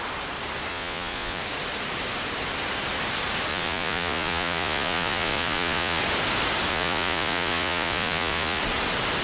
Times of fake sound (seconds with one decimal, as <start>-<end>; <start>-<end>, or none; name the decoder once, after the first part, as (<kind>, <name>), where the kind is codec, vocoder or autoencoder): 0.7-1.4 (vocoder, Vocos); 3.5-6.0; 6.7-8.6